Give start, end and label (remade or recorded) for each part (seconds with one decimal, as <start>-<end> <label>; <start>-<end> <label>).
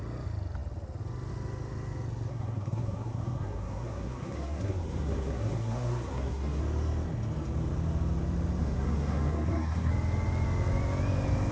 0.0-2.3 recorded; 2.3-6.6 remade; 6.6-8.6 recorded; 8.6-9.9 remade; 9.9-11.5 recorded